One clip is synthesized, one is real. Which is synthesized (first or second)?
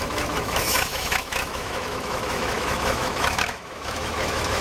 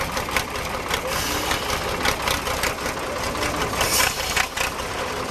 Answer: first